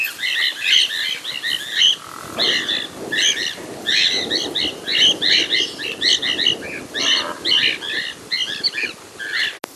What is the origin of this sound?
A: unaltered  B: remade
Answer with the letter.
A